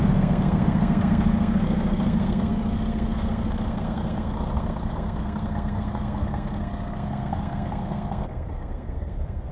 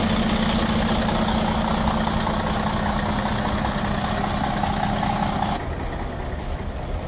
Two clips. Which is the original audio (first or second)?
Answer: second